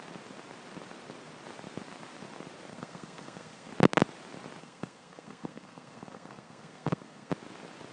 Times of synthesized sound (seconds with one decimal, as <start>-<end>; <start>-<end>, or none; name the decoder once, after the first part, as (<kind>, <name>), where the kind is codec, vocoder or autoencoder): 2.7-3.7 (codec, SNAC); 4.6-7.3